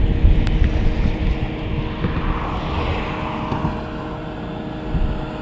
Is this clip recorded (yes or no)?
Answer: yes